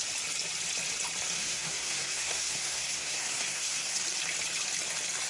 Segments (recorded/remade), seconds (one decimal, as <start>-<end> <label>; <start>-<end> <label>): 0.0-1.4 recorded; 1.4-4.0 remade; 4.0-5.3 recorded